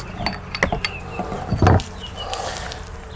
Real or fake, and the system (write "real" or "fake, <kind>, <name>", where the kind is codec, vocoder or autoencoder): real